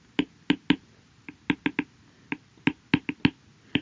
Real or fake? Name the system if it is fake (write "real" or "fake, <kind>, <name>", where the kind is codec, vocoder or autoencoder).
real